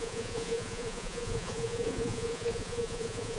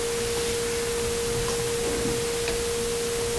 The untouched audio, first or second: second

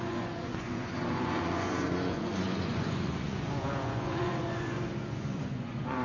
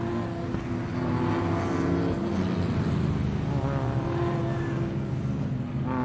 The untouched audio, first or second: second